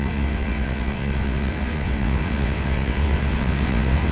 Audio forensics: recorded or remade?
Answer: remade